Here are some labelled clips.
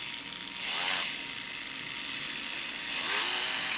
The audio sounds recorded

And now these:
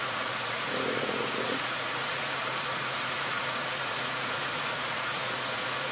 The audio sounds remade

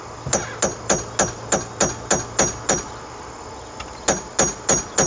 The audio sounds recorded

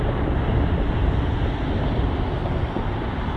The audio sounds recorded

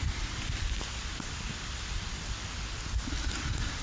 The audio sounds recorded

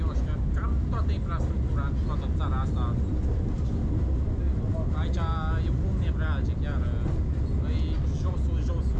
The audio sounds recorded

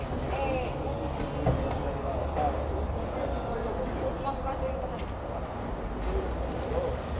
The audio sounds recorded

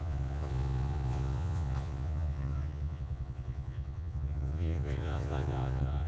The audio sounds remade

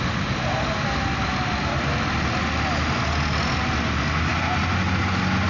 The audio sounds recorded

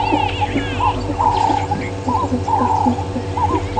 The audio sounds recorded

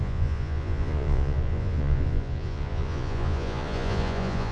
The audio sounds remade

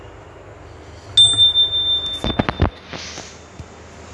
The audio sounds recorded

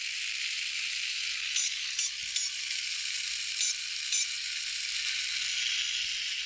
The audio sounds recorded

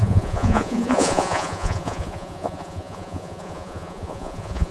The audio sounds remade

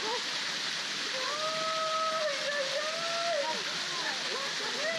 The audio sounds recorded